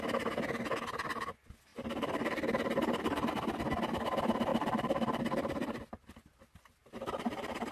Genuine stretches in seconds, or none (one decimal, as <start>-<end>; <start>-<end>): 0.0-1.7; 3.3-4.5; 5.9-6.8